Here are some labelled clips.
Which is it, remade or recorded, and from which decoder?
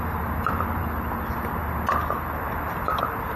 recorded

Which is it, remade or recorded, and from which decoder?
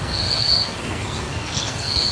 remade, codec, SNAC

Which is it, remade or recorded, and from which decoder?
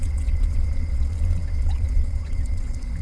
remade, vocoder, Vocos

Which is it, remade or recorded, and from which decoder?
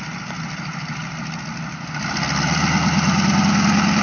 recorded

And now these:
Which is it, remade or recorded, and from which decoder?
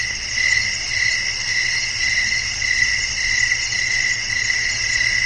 recorded